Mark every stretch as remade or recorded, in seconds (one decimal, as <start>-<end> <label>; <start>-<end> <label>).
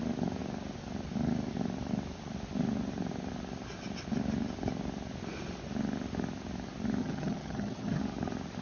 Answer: 0.0-7.0 recorded; 7.0-8.0 remade; 8.0-8.6 recorded